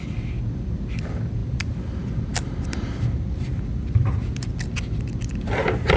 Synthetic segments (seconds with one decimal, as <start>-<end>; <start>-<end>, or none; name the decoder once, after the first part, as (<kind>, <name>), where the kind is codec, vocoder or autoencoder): 1.4-5.0 (vocoder, BigVGAN v2)